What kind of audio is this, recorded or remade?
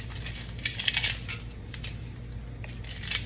recorded